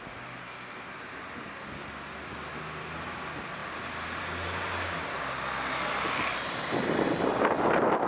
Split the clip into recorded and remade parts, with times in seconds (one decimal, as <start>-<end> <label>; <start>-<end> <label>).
0.0-0.4 recorded; 0.4-1.0 remade; 1.0-8.1 recorded